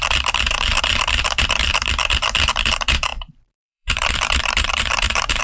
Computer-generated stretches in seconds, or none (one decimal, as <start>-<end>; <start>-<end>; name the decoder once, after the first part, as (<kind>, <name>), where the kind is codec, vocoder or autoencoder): 0.0-5.4 (vocoder, BigVGAN v2)